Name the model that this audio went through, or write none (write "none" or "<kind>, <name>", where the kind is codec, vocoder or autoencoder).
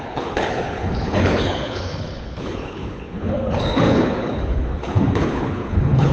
codec, HILCodec